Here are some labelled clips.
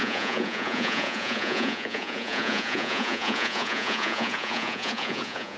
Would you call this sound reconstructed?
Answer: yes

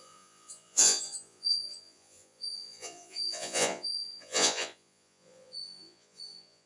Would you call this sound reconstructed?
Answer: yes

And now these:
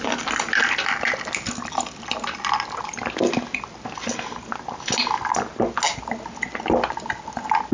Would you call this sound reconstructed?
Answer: no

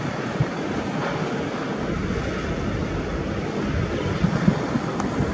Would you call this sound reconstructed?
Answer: no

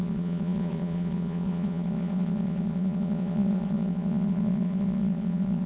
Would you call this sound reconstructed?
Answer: yes